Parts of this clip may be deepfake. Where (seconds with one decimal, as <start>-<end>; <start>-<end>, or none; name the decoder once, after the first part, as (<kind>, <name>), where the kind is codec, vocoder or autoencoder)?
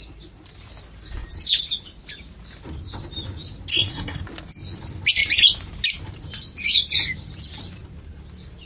3.7-4.2 (codec, SNAC)